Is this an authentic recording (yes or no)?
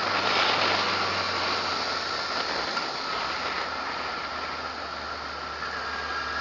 yes